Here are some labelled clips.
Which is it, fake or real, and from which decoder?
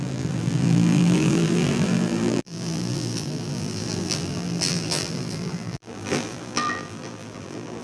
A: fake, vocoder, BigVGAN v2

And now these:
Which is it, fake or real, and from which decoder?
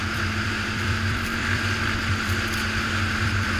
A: fake, vocoder, BigVGAN v2